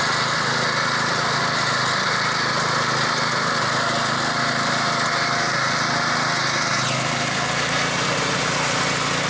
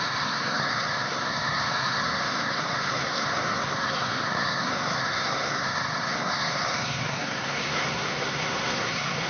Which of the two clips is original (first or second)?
first